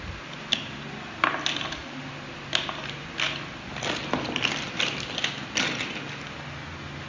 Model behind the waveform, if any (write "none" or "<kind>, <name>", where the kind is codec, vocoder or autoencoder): none